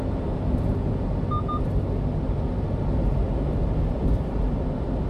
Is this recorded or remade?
recorded